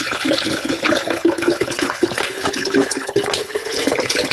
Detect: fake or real fake